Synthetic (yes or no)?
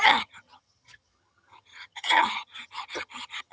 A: yes